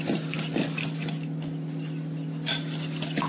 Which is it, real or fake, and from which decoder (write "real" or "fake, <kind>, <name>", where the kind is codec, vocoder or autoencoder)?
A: real